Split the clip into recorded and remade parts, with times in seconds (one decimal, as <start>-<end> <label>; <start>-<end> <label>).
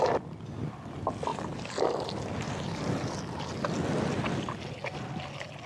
0.0-5.7 recorded